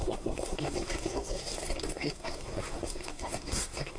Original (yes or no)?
no